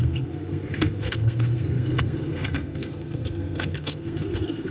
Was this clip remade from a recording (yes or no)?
yes